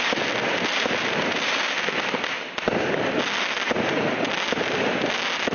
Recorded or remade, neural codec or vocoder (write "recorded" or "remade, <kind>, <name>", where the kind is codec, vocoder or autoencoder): recorded